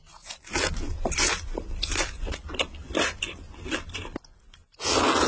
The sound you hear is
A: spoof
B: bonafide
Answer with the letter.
B